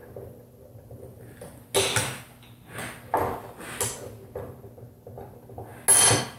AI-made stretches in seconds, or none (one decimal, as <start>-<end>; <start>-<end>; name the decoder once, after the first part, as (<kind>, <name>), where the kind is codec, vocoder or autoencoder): none